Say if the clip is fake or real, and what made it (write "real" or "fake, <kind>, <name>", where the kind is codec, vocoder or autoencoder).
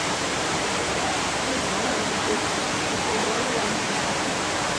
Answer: fake, vocoder, BigVGAN v2